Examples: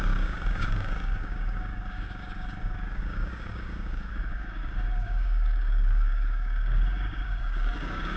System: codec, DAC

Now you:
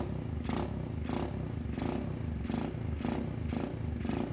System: none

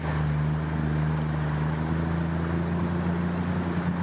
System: none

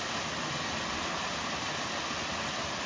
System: none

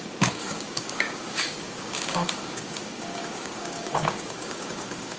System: codec, DAC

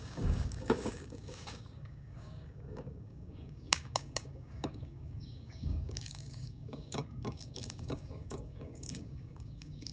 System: codec, DAC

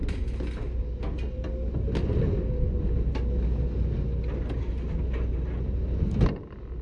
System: none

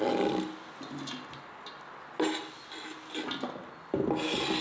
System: none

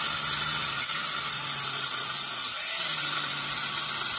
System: none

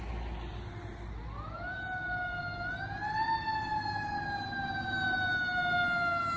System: none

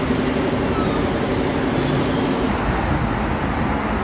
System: none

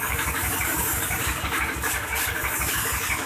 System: codec, DAC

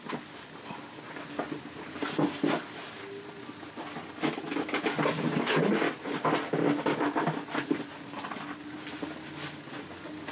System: none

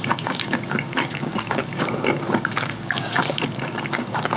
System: codec, DAC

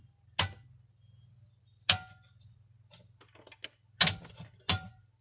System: none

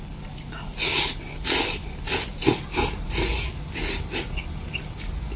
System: none